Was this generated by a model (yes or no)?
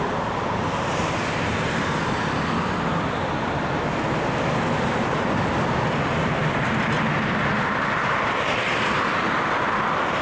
no